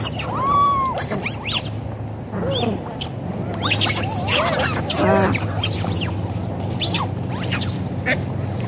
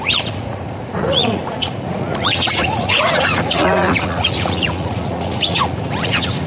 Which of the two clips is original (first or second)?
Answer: first